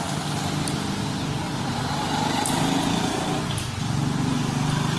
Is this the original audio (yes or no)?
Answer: yes